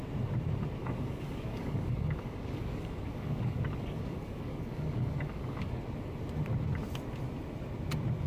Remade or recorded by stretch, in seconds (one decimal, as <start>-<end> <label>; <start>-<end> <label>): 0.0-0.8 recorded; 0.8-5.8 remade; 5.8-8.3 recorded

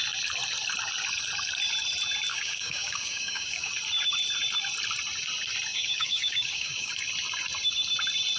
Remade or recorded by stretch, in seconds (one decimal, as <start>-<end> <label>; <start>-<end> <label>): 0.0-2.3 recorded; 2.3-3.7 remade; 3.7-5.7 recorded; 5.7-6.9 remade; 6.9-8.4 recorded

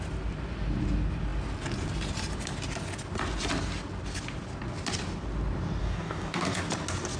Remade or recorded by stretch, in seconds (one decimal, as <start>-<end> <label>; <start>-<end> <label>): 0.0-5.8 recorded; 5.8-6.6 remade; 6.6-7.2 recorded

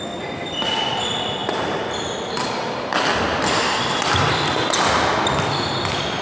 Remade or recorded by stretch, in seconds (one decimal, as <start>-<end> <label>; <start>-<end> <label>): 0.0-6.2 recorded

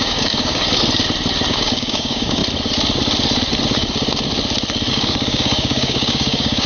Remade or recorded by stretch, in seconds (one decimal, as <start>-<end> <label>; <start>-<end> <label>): 0.0-0.6 remade; 0.6-1.5 recorded; 1.5-2.4 remade; 2.4-4.9 recorded; 4.9-6.7 remade

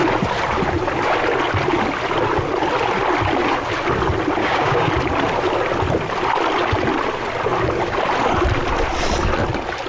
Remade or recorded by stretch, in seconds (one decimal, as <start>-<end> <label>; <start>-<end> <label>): 0.0-4.4 recorded; 4.4-4.9 remade; 4.9-9.9 recorded

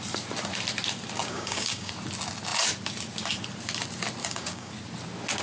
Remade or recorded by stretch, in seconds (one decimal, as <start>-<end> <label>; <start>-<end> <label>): 0.0-1.2 recorded; 1.2-1.9 remade; 1.9-4.2 recorded; 4.2-4.7 remade; 4.7-5.4 recorded